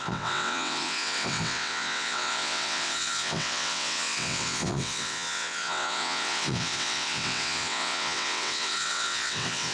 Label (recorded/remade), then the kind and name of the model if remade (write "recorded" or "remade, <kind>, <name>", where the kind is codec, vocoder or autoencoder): remade, vocoder, WaveNeXt